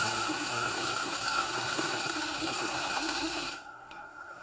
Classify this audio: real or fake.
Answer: fake